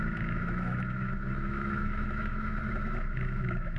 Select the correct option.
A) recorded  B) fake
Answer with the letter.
B